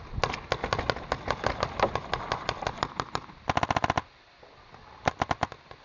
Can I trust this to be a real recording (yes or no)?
yes